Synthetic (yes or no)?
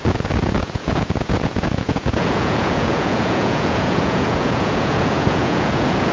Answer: yes